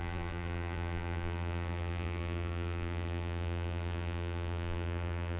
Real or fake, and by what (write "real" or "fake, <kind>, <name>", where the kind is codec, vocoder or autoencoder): fake, vocoder, BigVGAN v2